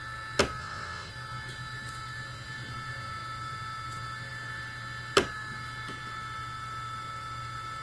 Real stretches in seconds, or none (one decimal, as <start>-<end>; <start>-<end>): 0.0-0.6; 1.1-7.8